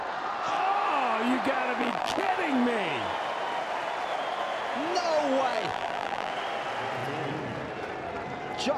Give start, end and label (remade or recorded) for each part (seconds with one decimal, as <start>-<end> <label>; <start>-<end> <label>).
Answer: 0.0-1.8 recorded; 1.8-2.3 remade; 2.3-5.5 recorded; 5.5-6.3 remade; 6.3-8.8 recorded